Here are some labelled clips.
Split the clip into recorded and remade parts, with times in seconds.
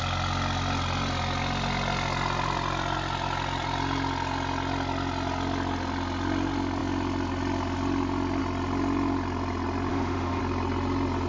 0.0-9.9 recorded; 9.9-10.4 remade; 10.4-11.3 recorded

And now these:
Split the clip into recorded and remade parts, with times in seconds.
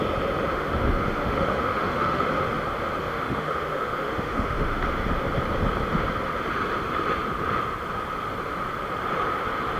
0.0-0.5 recorded; 0.5-2.3 remade; 2.3-3.0 recorded; 3.0-4.8 remade; 4.8-9.8 recorded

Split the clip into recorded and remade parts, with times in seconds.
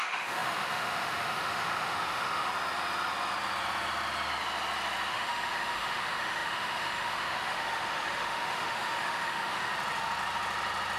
0.0-2.5 remade; 2.5-5.1 recorded; 5.1-9.7 remade; 9.7-11.0 recorded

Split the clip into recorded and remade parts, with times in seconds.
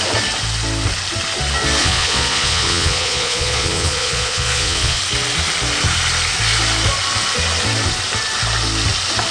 0.0-1.8 recorded; 1.8-5.0 remade; 5.0-9.3 recorded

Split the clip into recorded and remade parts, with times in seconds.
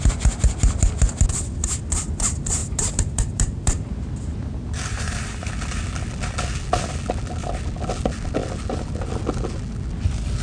0.0-2.6 recorded; 2.6-4.1 remade; 4.1-4.9 recorded; 4.9-5.5 remade; 5.5-10.4 recorded